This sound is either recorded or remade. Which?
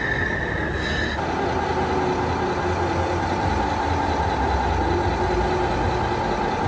recorded